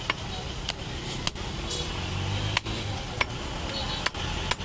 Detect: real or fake real